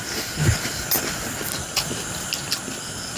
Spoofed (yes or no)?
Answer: no